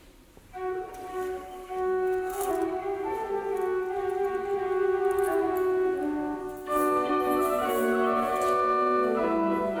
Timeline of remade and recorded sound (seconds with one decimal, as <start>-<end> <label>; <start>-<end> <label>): 0.0-1.1 recorded; 1.1-2.5 remade; 2.5-6.4 recorded; 6.4-7.1 remade; 7.1-9.8 recorded

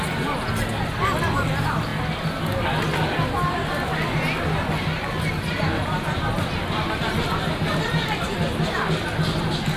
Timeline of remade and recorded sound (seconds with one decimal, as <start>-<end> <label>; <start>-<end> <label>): 0.0-9.8 recorded

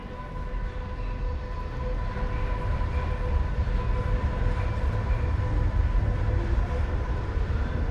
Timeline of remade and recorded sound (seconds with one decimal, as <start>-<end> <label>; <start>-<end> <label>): 0.0-7.9 recorded

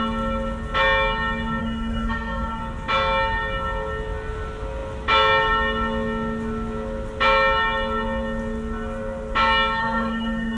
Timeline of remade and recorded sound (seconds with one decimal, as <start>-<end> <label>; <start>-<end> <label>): 0.0-1.6 recorded; 1.6-2.6 remade; 2.6-9.8 recorded; 9.8-10.6 remade

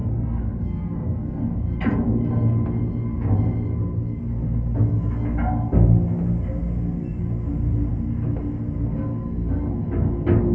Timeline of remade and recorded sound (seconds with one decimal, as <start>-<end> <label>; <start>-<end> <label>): 0.0-1.4 remade; 1.4-10.5 recorded

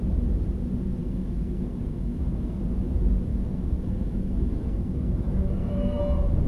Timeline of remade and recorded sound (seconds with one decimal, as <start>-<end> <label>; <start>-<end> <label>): 0.0-1.0 recorded; 1.0-2.6 remade; 2.6-3.3 recorded; 3.3-6.0 remade; 6.0-6.5 recorded